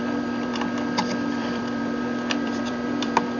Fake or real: fake